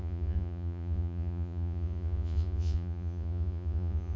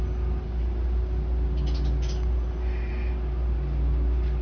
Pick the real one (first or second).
second